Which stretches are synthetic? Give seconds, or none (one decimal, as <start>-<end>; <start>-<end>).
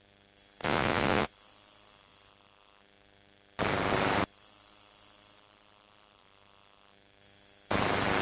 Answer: 0.6-1.3